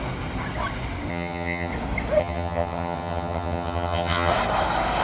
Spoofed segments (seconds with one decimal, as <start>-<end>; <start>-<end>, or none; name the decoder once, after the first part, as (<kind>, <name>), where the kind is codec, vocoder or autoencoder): 1.1-1.7 (vocoder, HiFi-GAN); 2.2-4.3